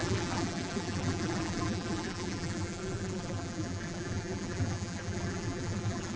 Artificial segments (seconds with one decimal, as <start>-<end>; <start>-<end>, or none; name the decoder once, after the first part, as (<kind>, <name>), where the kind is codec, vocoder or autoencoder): 0.0-6.2 (vocoder, BigVGAN v2)